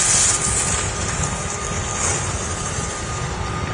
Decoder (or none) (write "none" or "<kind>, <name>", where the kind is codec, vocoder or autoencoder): none